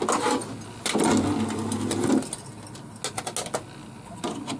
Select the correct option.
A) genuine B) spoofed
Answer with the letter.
A